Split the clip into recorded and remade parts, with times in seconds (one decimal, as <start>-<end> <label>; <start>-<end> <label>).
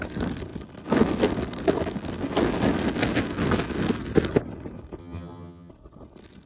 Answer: 0.0-5.0 recorded; 5.0-5.7 remade; 5.7-6.5 recorded